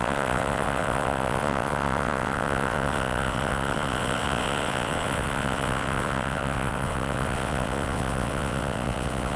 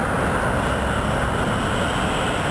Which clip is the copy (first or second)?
first